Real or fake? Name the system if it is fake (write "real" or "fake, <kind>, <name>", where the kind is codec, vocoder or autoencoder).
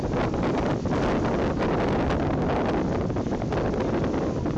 real